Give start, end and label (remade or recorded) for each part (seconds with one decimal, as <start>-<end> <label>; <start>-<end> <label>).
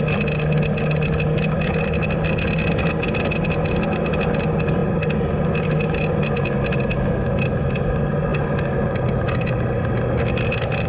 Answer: 0.0-10.9 recorded